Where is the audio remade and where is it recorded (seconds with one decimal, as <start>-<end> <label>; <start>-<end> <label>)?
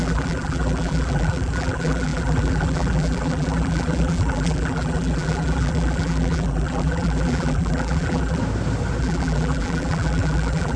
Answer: 0.0-8.4 remade; 8.4-9.0 recorded; 9.0-10.8 remade